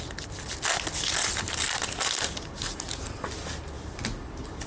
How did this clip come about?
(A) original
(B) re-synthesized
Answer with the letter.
A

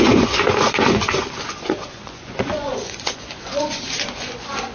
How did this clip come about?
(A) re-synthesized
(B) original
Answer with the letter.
A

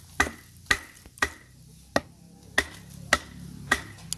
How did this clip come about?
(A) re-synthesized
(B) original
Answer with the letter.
B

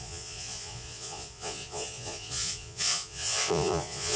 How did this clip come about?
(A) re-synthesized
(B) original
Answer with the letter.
A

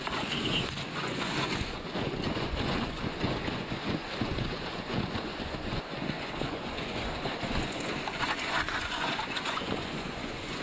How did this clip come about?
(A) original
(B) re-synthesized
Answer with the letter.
B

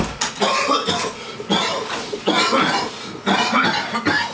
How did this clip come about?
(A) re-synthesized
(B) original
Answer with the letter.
B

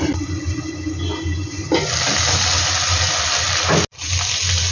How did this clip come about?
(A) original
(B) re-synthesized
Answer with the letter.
A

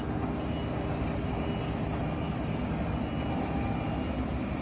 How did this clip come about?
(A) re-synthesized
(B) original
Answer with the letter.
B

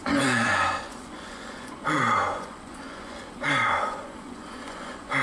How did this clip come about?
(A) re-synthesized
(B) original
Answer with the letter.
A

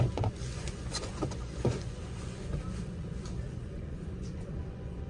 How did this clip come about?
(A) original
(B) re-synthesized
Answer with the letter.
B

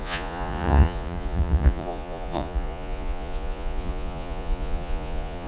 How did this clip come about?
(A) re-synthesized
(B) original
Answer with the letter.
A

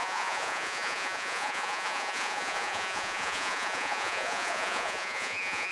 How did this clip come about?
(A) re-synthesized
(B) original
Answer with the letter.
A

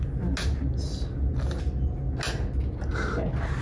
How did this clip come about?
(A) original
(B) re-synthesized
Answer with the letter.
A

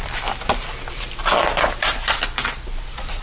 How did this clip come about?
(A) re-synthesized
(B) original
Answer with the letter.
B